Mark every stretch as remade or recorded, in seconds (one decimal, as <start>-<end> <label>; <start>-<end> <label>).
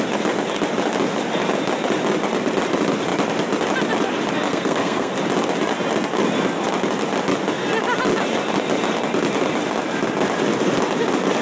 0.0-4.5 recorded; 4.5-5.1 remade; 5.1-11.4 recorded